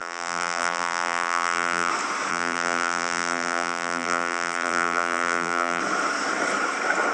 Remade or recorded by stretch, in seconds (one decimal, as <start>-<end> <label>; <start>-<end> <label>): 0.0-1.9 remade; 1.9-2.3 recorded; 2.3-5.8 remade; 5.8-7.1 recorded